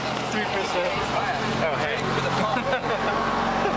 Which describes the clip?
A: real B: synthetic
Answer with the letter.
A